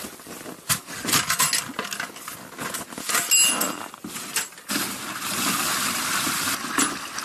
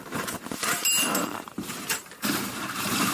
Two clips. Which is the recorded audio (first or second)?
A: first